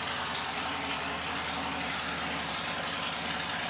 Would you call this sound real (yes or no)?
no